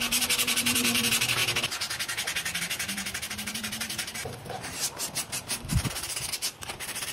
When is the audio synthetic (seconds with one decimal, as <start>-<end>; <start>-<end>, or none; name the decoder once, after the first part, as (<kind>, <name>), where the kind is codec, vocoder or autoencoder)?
0.0-1.4 (vocoder, BigVGAN v2); 2.6-5.0; 5.6-7.1